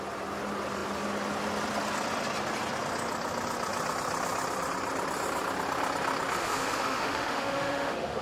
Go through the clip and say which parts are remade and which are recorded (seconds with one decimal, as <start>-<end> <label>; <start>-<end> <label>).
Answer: 0.0-6.4 recorded; 6.4-8.2 remade